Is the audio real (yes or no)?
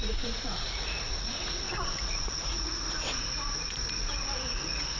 no